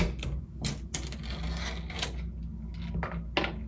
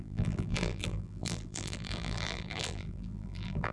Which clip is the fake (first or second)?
second